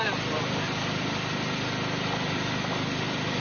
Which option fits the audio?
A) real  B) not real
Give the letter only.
A